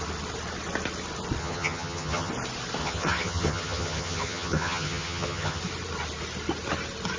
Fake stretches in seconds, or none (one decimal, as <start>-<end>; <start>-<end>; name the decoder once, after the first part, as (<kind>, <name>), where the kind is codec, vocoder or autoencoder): 1.4-2.3 (vocoder, HiFi-GAN); 2.8-5.6

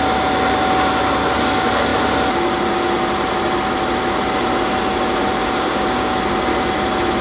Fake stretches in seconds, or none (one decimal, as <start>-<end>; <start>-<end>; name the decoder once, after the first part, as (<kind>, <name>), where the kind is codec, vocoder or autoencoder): 5.4-6.2 (codec, DAC)

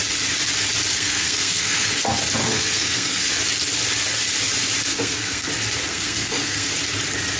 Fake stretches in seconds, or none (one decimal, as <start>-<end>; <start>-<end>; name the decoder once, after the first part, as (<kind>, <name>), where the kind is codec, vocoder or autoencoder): 0.9-2.0 (codec, SNAC); 2.4-3.3; 4.9-5.5; 5.9-6.7